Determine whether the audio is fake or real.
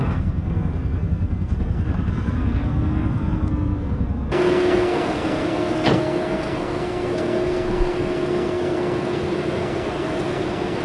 fake